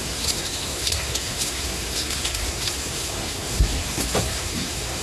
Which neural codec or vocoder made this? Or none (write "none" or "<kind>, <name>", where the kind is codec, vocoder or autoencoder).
codec, SNAC